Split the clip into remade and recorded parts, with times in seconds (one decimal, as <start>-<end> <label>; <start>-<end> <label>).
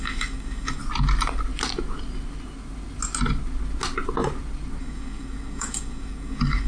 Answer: 0.0-0.8 remade; 0.8-4.8 recorded; 4.8-6.7 remade